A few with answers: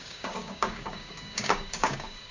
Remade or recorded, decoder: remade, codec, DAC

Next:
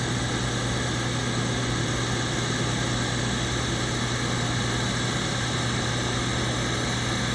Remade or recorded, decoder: recorded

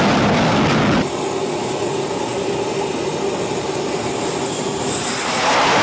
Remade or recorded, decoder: recorded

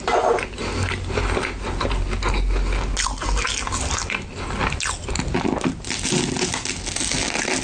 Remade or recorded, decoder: recorded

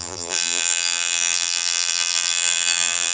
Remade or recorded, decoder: remade, vocoder, BigVGAN v2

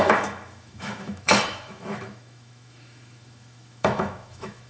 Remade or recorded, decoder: remade, autoencoder, DAC-VAE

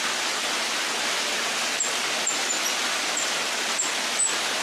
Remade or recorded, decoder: recorded